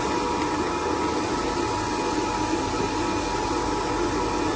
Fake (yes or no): no